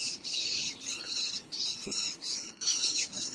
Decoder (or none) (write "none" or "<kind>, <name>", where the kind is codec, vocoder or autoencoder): codec, HILCodec